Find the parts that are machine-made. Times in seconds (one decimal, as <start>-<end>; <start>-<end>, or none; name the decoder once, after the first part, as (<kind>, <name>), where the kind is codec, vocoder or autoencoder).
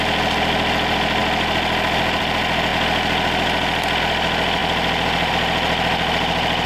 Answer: none